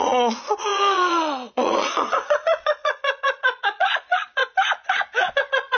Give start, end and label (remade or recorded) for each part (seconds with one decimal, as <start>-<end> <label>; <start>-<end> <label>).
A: 0.0-4.4 remade; 4.4-5.3 recorded; 5.3-5.8 remade